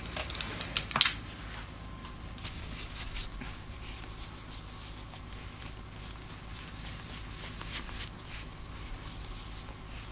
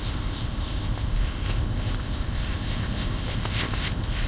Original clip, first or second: first